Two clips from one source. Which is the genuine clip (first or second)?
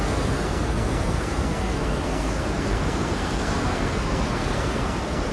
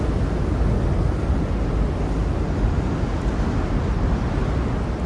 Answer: second